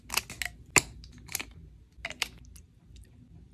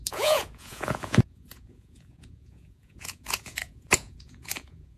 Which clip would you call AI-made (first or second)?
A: second